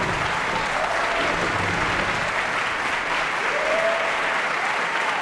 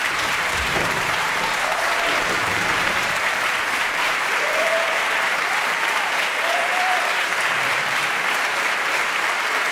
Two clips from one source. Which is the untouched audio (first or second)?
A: first